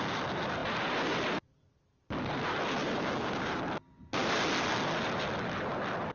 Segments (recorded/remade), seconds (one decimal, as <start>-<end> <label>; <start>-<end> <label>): 0.0-2.8 recorded; 2.8-3.6 remade; 3.6-6.1 recorded